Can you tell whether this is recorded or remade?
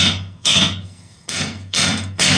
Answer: remade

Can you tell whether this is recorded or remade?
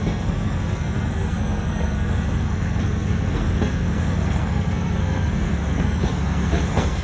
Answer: remade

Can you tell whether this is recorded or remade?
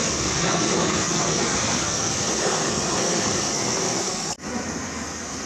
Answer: remade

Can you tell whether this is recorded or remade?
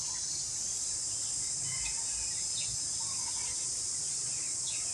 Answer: recorded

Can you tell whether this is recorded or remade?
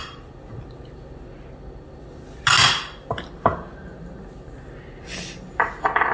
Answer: recorded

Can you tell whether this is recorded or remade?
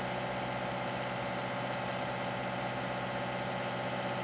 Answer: recorded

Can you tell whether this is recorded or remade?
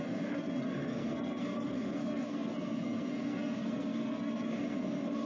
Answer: remade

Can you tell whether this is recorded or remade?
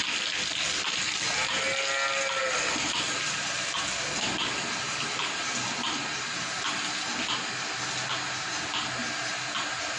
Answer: recorded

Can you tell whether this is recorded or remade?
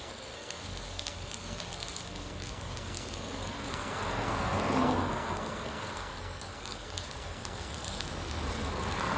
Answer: remade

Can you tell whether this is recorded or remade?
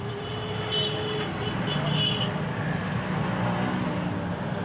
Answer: recorded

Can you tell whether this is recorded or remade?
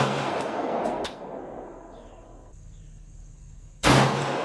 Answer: remade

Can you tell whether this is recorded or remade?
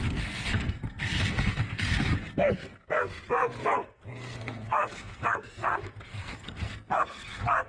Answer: remade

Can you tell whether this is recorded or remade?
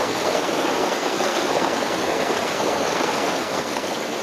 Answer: remade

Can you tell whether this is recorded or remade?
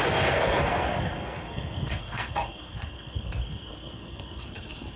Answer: remade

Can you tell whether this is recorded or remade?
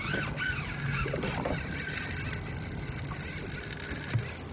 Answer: recorded